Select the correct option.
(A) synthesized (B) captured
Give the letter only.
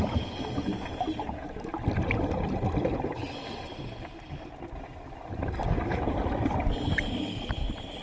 B